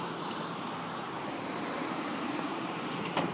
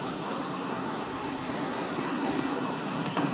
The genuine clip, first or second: first